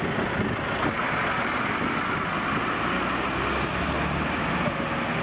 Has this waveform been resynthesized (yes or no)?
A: no